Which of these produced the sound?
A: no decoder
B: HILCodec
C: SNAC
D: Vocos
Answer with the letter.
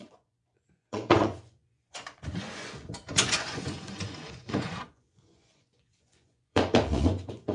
D